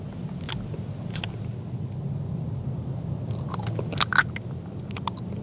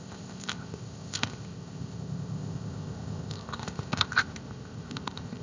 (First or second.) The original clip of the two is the first